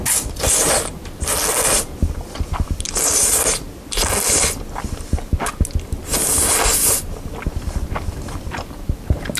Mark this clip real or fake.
real